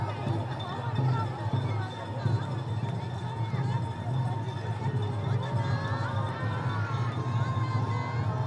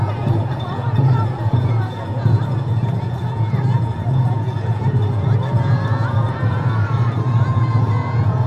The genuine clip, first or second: first